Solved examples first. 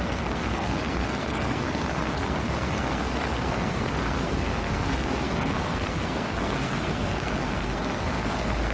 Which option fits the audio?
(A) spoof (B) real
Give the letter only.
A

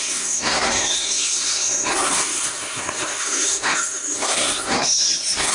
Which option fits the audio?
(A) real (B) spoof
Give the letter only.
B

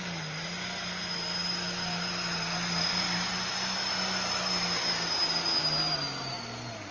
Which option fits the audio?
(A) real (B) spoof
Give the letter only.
A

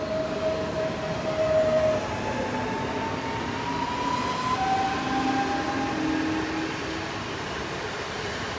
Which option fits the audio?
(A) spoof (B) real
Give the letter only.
B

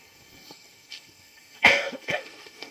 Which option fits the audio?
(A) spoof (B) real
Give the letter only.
A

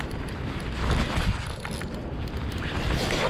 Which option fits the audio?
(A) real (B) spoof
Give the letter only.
A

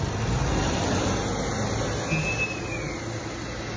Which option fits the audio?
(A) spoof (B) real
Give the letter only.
B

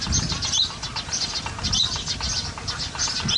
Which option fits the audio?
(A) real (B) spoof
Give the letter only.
A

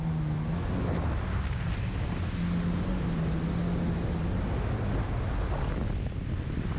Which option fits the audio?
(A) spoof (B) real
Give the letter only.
B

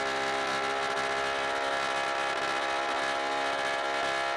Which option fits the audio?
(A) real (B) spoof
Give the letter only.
A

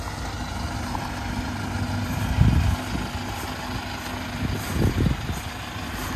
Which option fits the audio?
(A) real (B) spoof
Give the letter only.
A